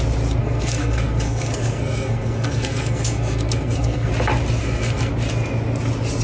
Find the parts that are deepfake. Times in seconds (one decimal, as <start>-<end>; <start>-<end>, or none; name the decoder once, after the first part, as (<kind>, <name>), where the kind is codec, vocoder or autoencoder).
0.4-4.1 (codec, SNAC); 4.6-5.1